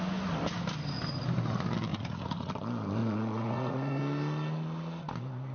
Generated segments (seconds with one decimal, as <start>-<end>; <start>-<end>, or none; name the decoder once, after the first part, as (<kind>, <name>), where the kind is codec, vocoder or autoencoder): 1.9-2.5 (vocoder, Vocos); 3.0-4.0